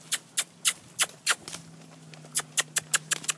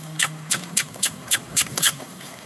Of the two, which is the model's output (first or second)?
second